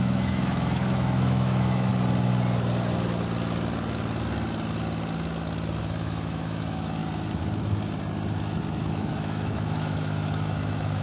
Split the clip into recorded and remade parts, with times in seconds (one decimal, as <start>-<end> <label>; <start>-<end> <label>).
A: 0.0-1.9 remade; 1.9-5.8 recorded; 5.8-7.0 remade; 7.0-8.9 recorded; 8.9-11.0 remade